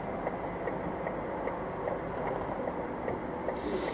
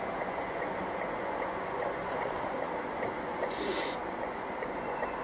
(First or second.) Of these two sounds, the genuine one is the first